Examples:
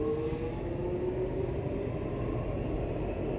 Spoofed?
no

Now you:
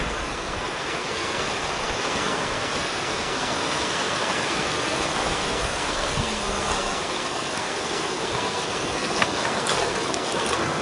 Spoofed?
yes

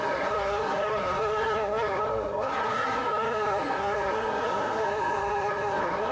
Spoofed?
yes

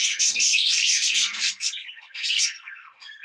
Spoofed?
yes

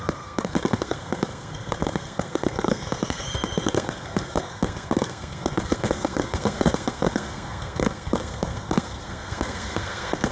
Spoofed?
yes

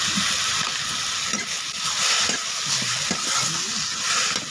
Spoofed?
no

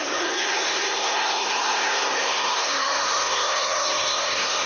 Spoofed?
yes